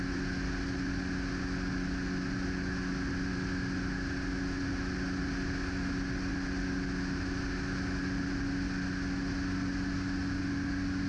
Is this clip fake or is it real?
real